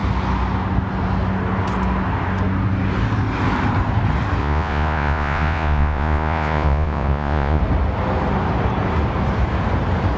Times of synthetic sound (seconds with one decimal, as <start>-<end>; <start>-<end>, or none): 4.4-7.6